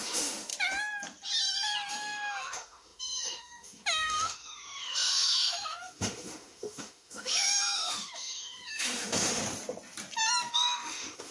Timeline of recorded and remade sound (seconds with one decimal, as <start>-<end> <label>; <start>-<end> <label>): 0.0-0.5 remade; 0.5-1.9 recorded; 1.9-9.4 remade; 9.4-10.5 recorded; 10.5-11.3 remade